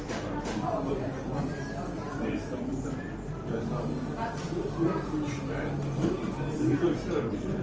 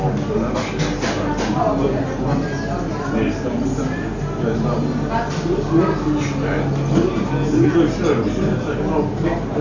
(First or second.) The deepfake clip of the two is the first